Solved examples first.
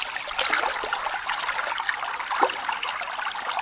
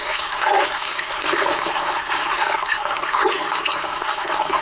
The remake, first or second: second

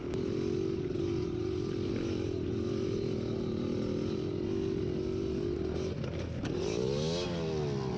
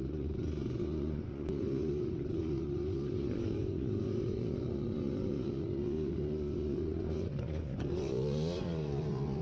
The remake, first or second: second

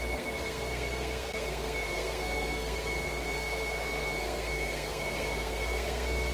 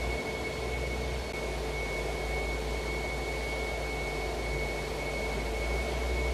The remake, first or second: first